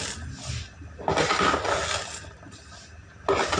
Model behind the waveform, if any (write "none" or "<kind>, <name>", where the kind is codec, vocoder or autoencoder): none